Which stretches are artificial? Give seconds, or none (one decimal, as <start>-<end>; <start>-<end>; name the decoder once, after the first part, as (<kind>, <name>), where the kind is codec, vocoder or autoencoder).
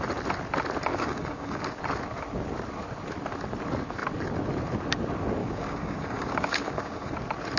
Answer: 0.9-1.8 (codec, DAC); 5.4-7.1